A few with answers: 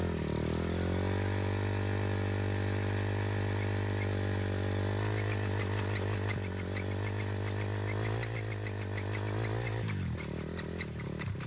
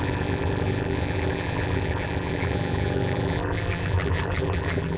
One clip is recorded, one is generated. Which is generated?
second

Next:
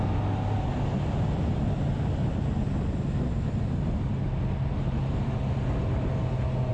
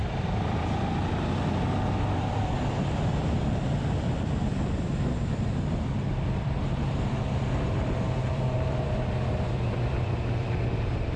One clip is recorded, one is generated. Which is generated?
second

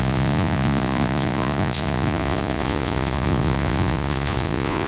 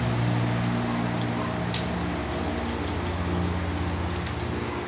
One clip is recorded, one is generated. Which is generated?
first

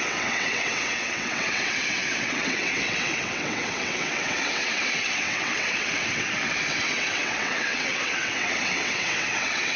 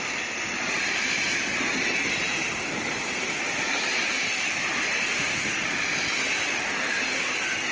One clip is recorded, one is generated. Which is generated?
first